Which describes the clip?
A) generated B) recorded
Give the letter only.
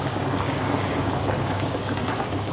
A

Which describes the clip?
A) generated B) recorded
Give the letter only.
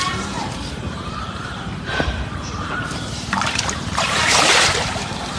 A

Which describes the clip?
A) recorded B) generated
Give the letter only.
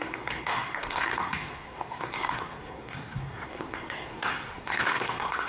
B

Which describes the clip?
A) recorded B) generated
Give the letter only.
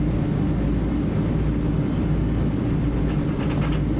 A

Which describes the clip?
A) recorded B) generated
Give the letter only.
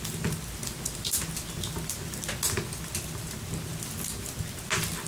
A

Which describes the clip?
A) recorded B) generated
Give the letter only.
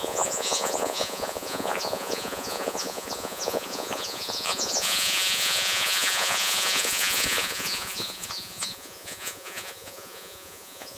B